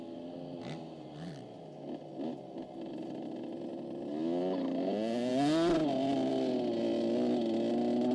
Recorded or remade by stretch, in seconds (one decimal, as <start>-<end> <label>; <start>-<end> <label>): 0.0-8.1 recorded